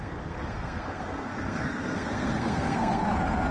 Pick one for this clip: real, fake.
fake